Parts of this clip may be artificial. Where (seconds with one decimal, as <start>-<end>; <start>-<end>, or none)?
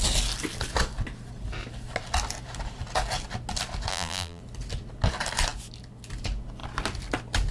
3.9-4.4